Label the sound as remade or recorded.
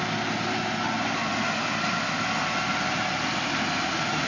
recorded